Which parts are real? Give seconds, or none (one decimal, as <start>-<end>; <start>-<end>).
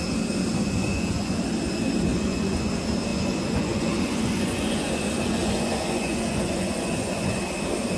0.0-0.5; 1.4-2.1; 2.7-3.1; 7.4-8.0